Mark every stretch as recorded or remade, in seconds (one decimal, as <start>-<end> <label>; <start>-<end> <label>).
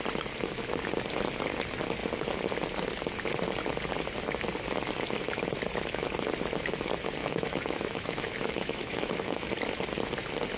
0.0-7.2 recorded; 7.2-9.5 remade; 9.5-10.6 recorded